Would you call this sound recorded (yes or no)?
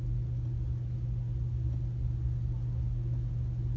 yes